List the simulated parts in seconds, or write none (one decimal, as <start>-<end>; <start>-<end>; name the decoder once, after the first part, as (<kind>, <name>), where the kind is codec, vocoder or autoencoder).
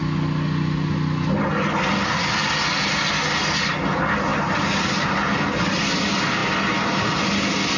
4.3-5.1 (vocoder, BigVGAN v2)